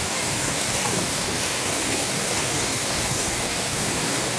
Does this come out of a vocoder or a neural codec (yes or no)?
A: yes